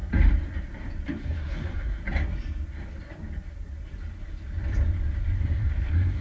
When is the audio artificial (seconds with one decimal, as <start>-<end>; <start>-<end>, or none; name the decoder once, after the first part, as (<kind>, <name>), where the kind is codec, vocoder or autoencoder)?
1.2-2.0 (codec, SNAC); 5.4-6.2